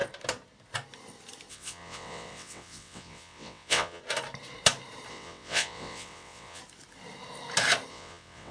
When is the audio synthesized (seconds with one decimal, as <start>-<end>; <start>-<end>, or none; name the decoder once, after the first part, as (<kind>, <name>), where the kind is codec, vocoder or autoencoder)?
1.5-4.0 (vocoder, WaveNeXt); 5.1-6.6; 7.9-8.5